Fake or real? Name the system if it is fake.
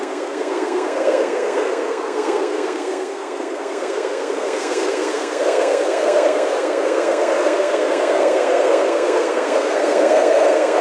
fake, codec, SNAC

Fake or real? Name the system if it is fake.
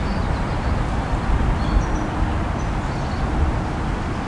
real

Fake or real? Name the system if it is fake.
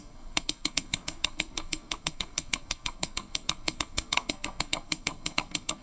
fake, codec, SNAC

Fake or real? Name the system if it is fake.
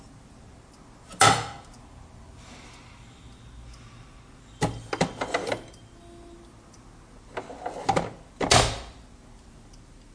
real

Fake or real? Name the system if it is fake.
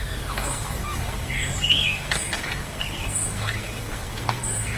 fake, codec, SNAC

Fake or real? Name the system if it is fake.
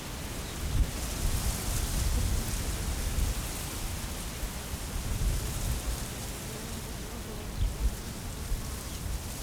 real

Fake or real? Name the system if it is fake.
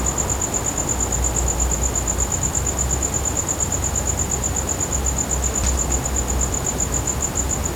real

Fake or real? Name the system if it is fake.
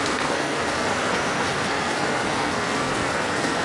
fake, codec, SNAC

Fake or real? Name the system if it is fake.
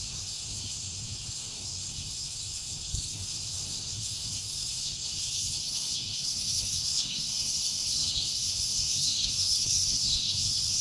fake, codec, SNAC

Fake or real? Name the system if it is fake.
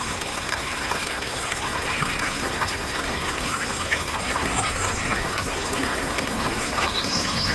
fake, codec, SNAC